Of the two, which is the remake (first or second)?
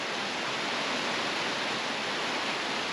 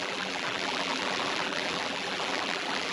second